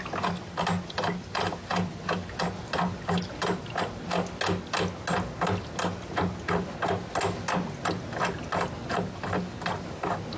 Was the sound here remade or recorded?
recorded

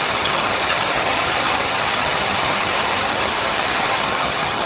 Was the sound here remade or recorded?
remade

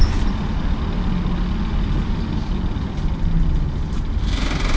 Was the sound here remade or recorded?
recorded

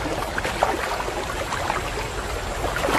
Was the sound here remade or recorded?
recorded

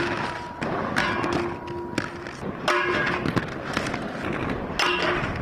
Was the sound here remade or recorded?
recorded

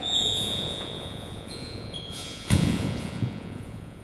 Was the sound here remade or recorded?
remade